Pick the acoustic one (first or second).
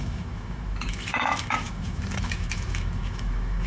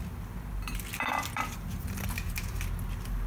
second